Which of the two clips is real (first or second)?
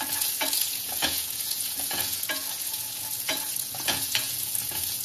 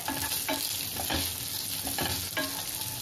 second